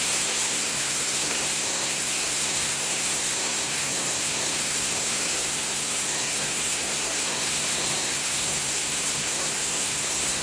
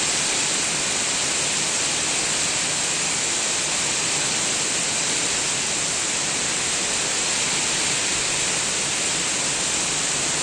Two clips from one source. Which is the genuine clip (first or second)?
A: second